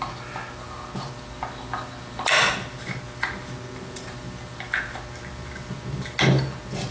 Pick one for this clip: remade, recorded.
recorded